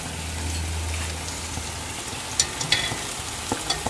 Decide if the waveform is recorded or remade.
recorded